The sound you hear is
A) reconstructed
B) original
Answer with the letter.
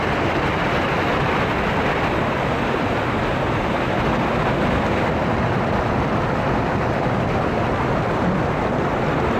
B